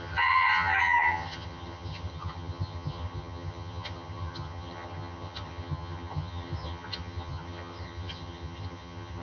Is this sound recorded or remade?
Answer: remade